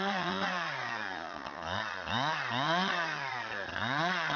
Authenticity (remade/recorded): remade